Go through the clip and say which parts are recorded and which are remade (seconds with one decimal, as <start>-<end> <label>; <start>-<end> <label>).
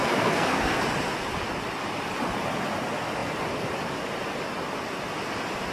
0.0-0.8 remade; 0.8-5.7 recorded